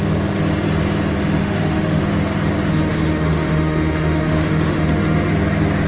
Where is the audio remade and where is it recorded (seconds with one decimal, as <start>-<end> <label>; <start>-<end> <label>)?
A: 0.0-1.4 recorded; 1.4-2.0 remade; 2.0-2.7 recorded; 2.7-5.3 remade; 5.3-5.9 recorded